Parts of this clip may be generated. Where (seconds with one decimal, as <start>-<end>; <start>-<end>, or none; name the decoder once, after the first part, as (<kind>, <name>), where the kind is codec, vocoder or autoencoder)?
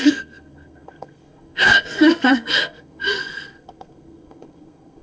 0.0-5.0 (codec, SNAC)